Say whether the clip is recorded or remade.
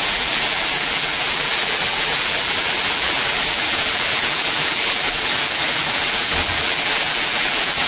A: remade